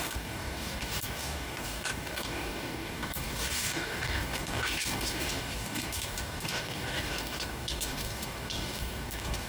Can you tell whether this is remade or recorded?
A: remade